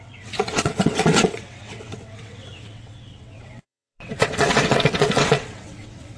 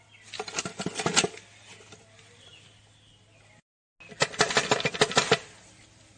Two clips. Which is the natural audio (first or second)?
second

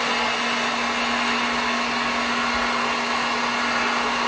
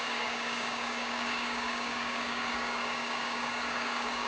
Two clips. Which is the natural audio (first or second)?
first